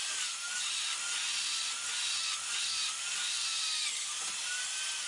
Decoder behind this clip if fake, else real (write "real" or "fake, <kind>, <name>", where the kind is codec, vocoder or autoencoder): real